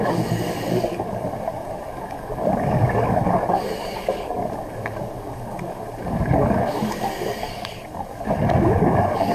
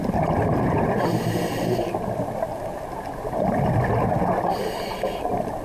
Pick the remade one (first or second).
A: first